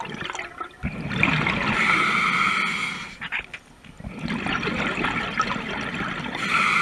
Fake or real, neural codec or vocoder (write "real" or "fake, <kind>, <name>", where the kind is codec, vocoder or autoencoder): real